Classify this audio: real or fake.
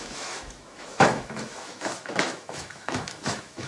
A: fake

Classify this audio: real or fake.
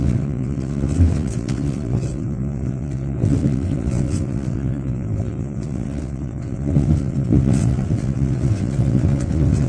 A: fake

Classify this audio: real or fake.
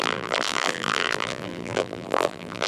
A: fake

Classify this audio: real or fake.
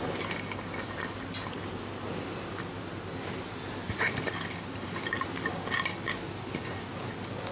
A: real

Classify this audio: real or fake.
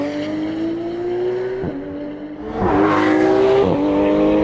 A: real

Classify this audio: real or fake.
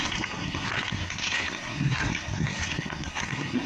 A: fake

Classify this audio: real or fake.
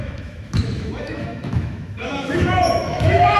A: fake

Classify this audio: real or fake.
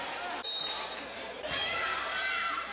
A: real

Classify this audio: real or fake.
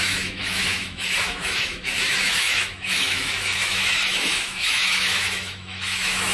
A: fake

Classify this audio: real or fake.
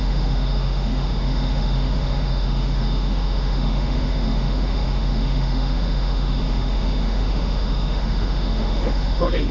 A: fake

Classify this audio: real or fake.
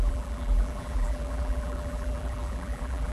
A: fake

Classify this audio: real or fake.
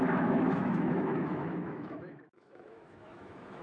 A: fake